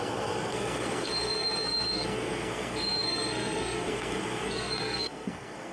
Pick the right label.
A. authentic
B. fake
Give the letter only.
B